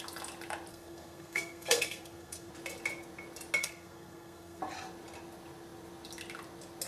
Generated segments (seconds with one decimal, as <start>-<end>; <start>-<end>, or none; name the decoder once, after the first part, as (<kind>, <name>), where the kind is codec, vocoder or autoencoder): 0.7-2.5 (codec, SNAC); 3.6-4.6